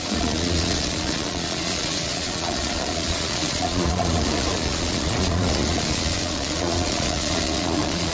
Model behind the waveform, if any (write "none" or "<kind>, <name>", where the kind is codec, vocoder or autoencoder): vocoder, Vocos